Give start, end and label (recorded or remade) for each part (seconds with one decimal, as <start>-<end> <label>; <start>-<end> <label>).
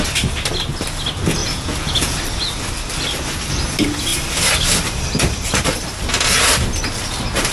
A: 0.0-1.4 recorded; 1.4-2.2 remade; 2.2-7.5 recorded